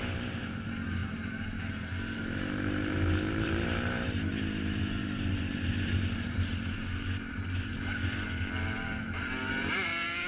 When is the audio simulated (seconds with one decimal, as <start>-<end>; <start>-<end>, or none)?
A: 0.0-4.3; 5.3-10.3